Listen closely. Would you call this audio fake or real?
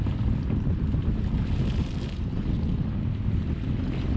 real